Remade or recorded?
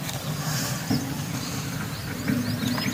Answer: recorded